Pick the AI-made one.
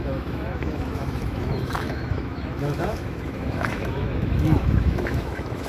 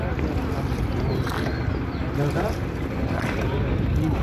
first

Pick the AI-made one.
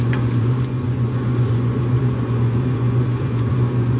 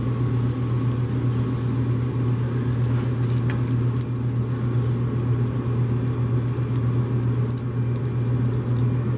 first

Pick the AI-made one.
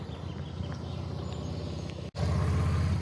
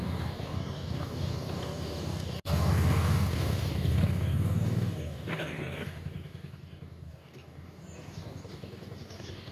second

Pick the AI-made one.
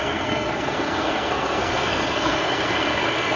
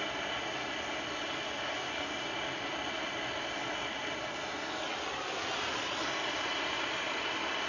first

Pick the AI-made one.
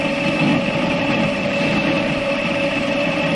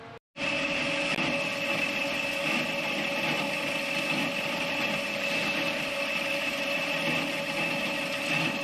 first